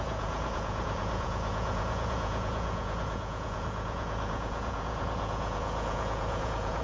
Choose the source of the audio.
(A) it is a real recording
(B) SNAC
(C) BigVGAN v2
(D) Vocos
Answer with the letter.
D